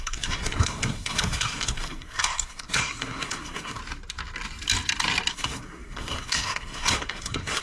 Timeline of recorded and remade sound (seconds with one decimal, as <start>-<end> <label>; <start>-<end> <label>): 0.0-3.8 remade; 3.8-5.3 recorded; 5.3-7.6 remade